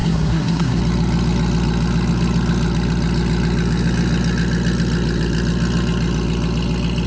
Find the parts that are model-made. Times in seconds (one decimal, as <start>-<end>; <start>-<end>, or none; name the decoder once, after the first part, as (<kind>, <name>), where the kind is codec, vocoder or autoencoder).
0.0-0.8 (codec, SNAC)